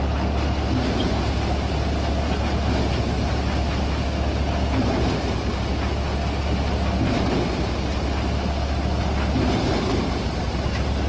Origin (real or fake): real